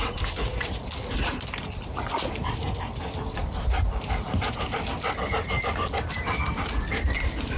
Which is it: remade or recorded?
recorded